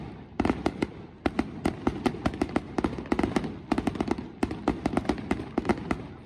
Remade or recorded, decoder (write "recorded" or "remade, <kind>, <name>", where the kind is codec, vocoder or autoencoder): recorded